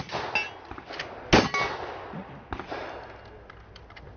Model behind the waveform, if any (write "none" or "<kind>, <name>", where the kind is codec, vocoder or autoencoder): none